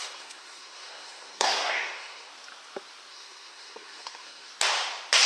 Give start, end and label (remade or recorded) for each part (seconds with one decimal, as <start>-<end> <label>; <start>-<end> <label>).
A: 0.0-2.3 remade; 2.3-3.1 recorded; 3.1-4.5 remade; 4.5-5.3 recorded